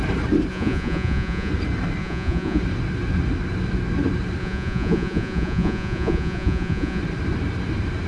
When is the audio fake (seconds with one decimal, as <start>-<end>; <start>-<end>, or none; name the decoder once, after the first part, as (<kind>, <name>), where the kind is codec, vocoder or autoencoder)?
0.5-1.5 (vocoder, Vocos); 2.0-2.6; 4.4-7.0